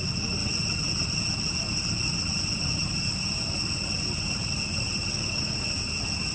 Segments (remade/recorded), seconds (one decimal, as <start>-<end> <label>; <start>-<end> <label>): 0.0-5.1 recorded; 5.1-5.6 remade; 5.6-6.3 recorded